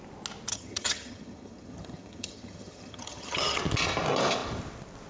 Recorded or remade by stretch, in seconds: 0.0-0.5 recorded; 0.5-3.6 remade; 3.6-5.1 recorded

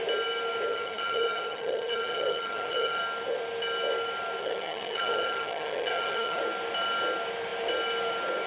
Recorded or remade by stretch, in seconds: 0.0-0.7 recorded; 0.7-3.0 remade; 3.0-4.4 recorded; 4.4-6.4 remade; 6.4-8.5 recorded